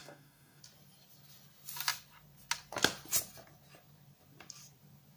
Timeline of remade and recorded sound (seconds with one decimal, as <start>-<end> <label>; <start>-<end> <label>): 0.0-0.6 remade; 0.6-5.2 recorded